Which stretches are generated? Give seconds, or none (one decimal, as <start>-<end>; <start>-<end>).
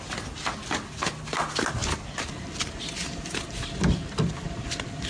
1.8-5.1